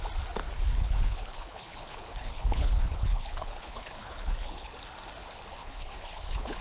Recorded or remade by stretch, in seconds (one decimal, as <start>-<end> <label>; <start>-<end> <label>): 0.0-0.7 recorded; 0.7-4.7 remade; 4.7-5.6 recorded; 5.6-6.6 remade